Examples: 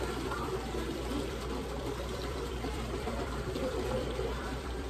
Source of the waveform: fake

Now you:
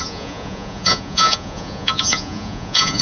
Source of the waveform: fake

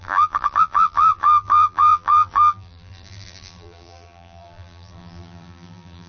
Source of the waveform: fake